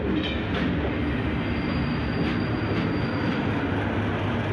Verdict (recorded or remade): recorded